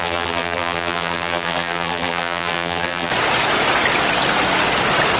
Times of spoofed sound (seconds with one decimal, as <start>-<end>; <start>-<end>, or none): 0.0-3.1